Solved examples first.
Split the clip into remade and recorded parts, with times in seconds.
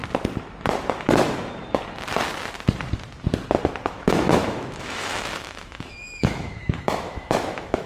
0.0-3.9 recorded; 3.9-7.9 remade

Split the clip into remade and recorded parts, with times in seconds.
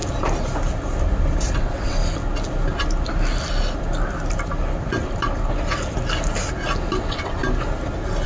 0.0-1.6 recorded; 1.6-2.0 remade; 2.0-7.0 recorded; 7.0-7.4 remade; 7.4-8.3 recorded